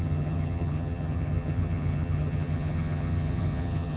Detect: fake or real fake